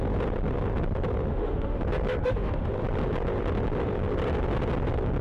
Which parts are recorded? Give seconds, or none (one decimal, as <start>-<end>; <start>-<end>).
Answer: 0.0-1.3; 1.8-2.2; 2.7-5.2